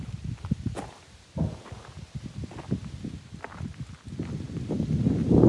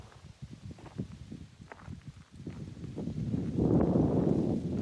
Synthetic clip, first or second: second